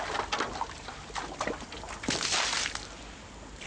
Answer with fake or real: real